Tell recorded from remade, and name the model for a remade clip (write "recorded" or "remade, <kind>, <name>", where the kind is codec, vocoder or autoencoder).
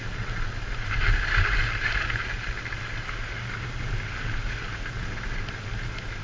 recorded